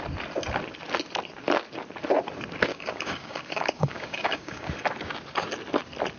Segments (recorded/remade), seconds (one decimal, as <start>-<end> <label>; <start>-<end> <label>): 0.0-2.7 recorded; 2.7-4.7 remade; 4.7-6.2 recorded